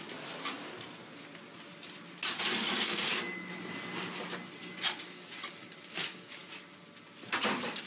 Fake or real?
real